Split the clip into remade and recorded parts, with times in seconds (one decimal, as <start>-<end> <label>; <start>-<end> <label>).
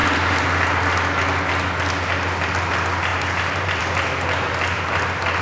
0.0-0.5 remade; 0.5-3.1 recorded; 3.1-3.8 remade; 3.8-5.4 recorded